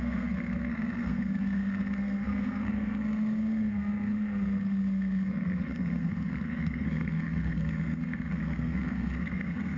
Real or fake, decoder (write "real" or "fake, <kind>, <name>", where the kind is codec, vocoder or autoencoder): fake, codec, SNAC